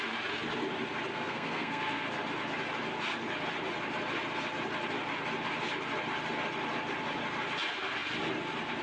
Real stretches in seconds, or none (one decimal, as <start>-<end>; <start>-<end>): 0.0-1.1; 2.1-8.8